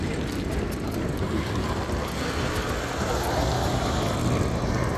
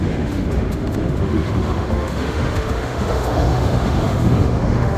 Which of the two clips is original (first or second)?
first